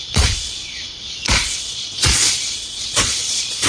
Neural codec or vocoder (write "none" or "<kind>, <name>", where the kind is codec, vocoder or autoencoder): vocoder, Vocos